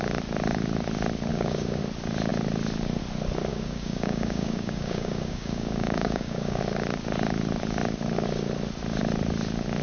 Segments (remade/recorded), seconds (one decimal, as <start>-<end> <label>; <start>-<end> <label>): 0.0-1.3 recorded; 1.3-1.8 remade; 1.8-3.5 recorded; 3.5-6.6 remade; 6.6-9.8 recorded